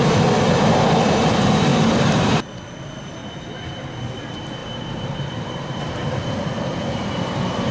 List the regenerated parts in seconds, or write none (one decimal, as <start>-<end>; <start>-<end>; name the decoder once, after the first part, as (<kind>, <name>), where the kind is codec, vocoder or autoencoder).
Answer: 4.6-6.2 (vocoder, BigVGAN v2)